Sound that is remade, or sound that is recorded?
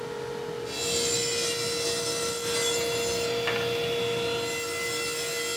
recorded